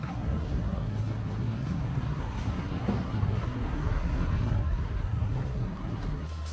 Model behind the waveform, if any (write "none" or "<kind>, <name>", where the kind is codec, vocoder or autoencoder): codec, SNAC